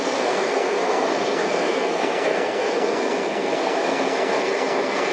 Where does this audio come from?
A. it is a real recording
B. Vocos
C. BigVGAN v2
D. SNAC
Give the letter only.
D